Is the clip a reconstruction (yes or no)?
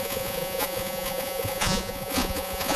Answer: yes